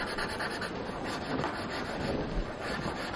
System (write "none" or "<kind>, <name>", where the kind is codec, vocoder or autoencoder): none